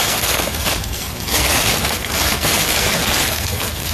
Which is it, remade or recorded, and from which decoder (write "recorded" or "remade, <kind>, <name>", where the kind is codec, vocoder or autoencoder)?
remade, codec, SNAC